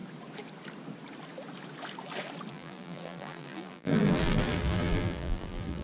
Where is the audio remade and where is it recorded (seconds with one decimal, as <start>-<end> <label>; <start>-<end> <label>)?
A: 0.0-2.5 recorded; 2.5-5.8 remade